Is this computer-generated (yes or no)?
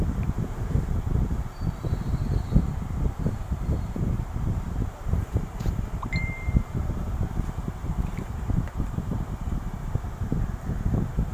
yes